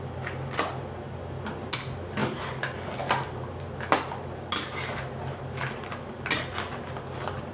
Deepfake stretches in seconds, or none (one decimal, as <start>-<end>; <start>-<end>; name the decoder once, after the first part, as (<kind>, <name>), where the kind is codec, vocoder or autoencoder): none